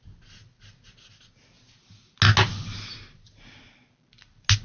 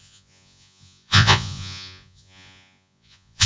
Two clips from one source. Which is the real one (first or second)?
first